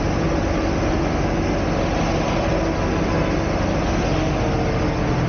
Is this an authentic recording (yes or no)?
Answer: yes